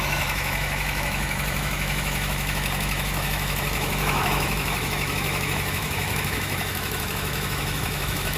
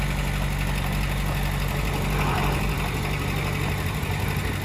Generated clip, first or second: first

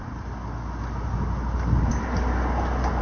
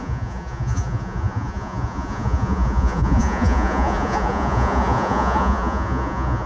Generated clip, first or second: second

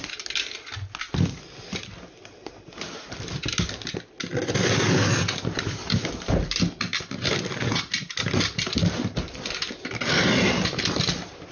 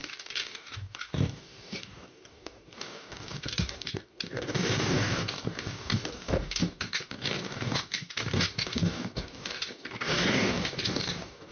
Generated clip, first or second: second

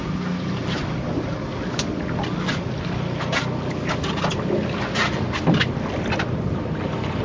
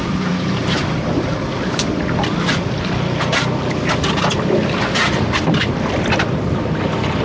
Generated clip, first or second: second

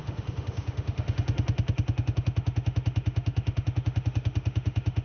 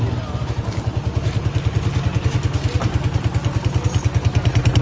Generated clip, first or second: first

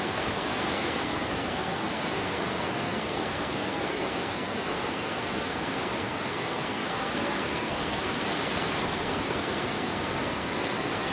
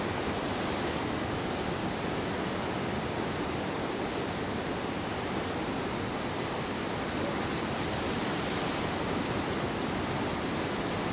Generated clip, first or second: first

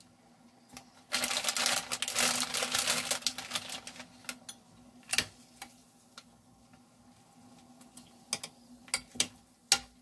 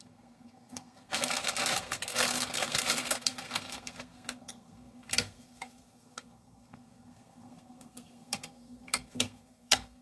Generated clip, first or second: second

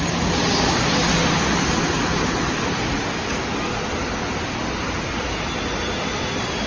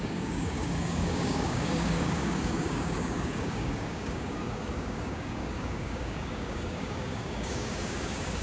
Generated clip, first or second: second